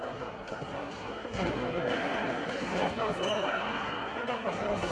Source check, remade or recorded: remade